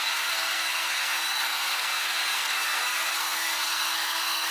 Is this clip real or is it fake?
fake